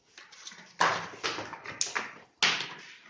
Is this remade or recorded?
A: recorded